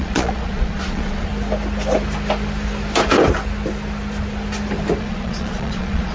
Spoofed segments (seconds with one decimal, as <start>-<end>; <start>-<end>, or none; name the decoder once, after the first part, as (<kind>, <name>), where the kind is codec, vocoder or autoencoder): 0.0-1.3 (vocoder, Vocos); 5.0-6.1